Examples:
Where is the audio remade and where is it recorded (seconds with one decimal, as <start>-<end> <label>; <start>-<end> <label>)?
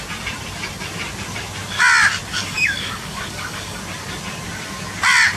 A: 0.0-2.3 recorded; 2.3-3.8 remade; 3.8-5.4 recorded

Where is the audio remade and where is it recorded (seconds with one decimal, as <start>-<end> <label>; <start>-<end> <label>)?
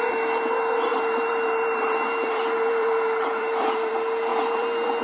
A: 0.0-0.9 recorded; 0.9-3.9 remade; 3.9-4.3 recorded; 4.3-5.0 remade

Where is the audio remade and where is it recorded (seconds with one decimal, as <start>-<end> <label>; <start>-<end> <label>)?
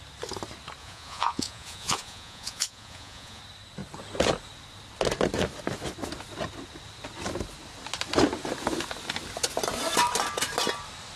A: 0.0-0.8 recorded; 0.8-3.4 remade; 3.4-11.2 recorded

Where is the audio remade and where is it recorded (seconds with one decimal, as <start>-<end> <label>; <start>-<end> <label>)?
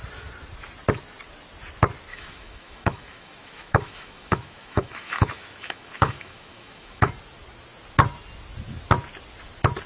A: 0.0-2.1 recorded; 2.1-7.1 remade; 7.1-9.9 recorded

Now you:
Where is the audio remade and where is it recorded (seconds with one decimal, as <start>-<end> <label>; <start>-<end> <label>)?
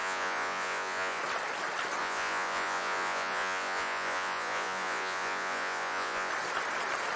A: 0.0-1.2 remade; 1.2-2.0 recorded; 2.0-6.3 remade; 6.3-7.2 recorded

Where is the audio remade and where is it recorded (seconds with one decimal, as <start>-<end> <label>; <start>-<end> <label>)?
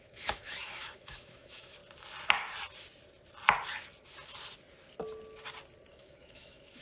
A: 0.0-1.8 remade; 1.8-5.9 recorded; 5.9-6.8 remade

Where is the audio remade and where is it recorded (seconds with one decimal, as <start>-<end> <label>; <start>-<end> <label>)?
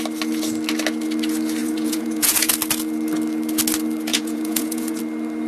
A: 0.0-1.6 recorded; 1.6-2.5 remade; 2.5-4.1 recorded; 4.1-5.0 remade; 5.0-5.5 recorded